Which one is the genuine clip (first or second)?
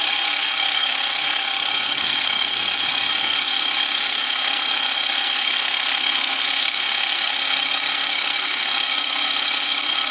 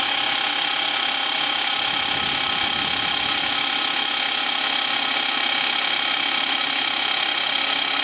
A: second